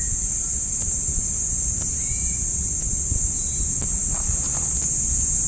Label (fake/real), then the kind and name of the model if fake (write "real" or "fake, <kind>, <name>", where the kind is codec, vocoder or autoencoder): real